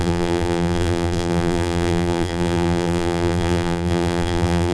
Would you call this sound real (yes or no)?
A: no